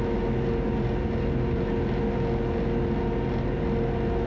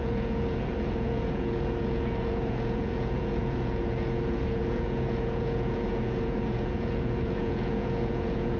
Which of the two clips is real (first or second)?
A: first